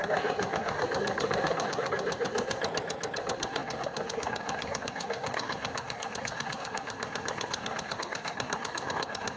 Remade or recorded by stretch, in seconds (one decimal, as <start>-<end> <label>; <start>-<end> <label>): 0.0-2.6 remade; 2.6-3.2 recorded; 3.2-9.4 remade